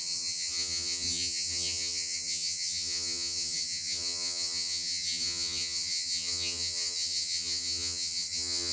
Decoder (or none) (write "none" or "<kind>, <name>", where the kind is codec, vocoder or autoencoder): vocoder, HiFi-GAN